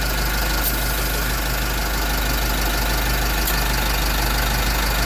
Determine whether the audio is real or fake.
real